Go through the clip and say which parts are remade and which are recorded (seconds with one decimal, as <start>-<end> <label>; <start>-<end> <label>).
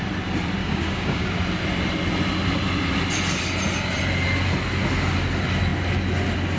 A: 0.0-0.6 recorded; 0.6-1.3 remade; 1.3-6.6 recorded